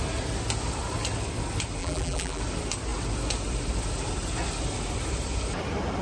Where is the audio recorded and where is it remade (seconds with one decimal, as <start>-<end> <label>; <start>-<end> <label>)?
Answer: 0.0-1.8 recorded; 1.8-2.4 remade; 2.4-6.0 recorded